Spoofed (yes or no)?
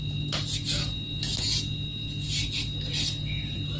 no